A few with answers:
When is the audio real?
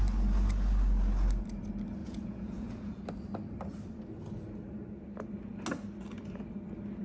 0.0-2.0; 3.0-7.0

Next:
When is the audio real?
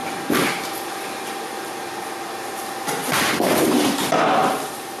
1.7-3.0; 4.2-5.0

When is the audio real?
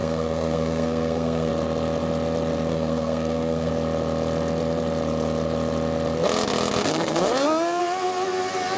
1.5-2.7; 3.7-6.8; 7.8-8.8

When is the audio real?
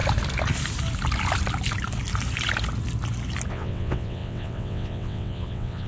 0.0-3.5